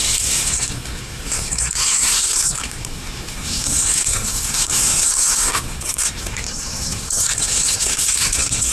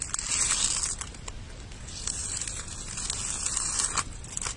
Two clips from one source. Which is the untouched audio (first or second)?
second